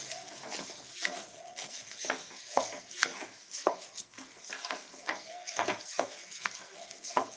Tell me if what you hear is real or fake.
fake